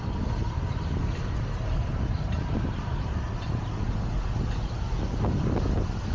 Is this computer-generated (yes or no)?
no